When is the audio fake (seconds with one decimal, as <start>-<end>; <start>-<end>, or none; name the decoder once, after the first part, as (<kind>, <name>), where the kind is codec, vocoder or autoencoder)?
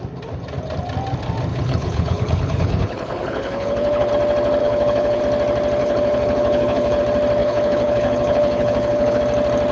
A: 1.5-4.1 (codec, HILCodec); 4.6-5.2; 5.8-7.0; 7.4-9.2